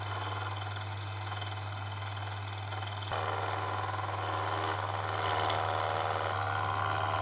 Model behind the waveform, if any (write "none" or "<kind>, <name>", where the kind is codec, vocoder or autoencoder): none